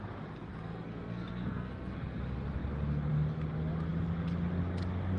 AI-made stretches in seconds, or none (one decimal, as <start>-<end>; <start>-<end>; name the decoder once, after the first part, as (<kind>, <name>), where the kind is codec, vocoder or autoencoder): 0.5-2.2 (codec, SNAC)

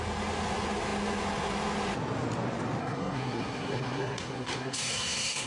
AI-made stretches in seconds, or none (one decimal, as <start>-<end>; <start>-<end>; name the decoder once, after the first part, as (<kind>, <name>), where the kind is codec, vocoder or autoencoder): 2.8-5.5 (codec, SNAC)

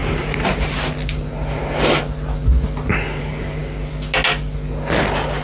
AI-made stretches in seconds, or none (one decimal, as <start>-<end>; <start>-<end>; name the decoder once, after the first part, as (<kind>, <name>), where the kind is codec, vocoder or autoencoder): none

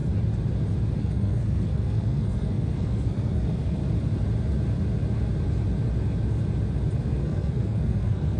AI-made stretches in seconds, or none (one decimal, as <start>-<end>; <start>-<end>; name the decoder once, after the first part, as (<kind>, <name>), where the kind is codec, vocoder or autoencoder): 1.0-3.8 (codec, SNAC); 7.0-8.4